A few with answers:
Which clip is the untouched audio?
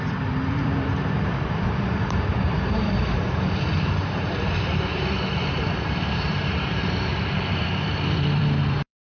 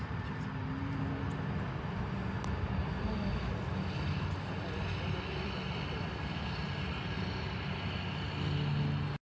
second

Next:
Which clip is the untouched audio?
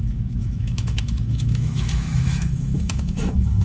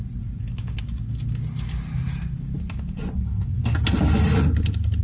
second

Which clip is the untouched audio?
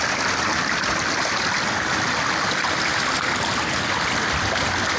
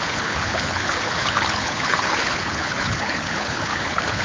first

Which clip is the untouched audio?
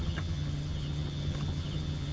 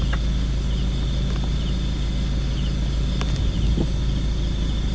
second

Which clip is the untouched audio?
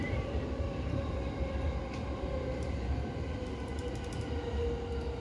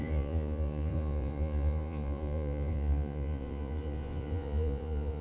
first